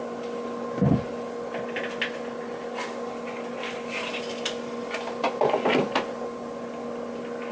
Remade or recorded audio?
recorded